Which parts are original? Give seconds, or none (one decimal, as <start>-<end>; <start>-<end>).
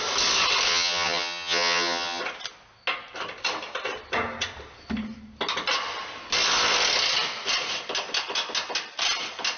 0.0-0.7; 2.2-9.6